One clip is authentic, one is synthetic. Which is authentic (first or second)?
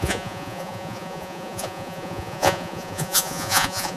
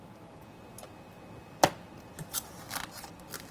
second